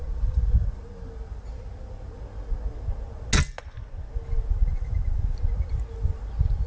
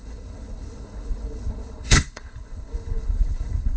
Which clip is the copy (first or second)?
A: second